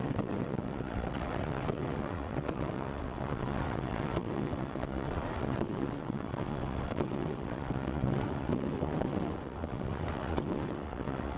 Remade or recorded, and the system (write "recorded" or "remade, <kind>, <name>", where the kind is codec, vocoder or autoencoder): remade, vocoder, WaveNeXt